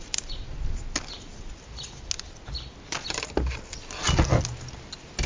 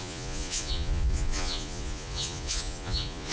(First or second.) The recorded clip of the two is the first